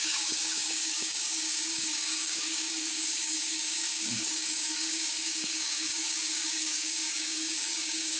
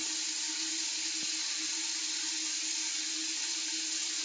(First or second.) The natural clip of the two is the second